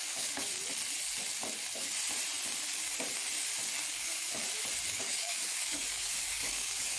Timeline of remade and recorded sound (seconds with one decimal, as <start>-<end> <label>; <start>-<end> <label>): 0.0-0.5 remade; 0.5-3.9 recorded; 3.9-4.4 remade; 4.4-4.9 recorded; 4.9-7.0 remade